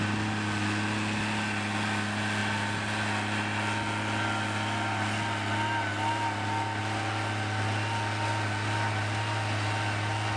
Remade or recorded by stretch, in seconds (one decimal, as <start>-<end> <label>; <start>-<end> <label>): 0.0-10.4 recorded